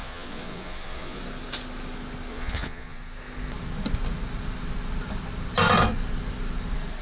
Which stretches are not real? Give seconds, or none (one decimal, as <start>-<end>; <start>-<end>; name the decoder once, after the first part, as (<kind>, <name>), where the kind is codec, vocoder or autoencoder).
0.0-1.2 (vocoder, Vocos); 2.3-3.0